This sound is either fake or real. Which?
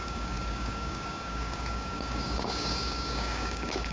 fake